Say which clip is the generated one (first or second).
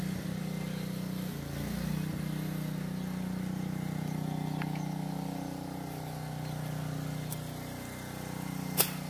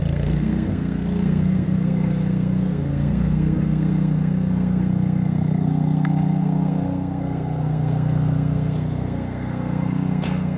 second